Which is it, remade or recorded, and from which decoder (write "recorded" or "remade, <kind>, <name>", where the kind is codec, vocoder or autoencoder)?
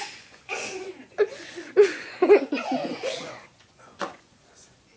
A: remade, vocoder, Vocos